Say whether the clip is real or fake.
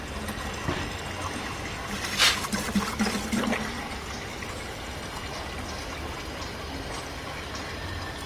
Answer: real